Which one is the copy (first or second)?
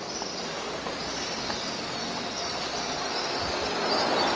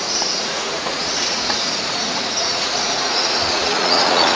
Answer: second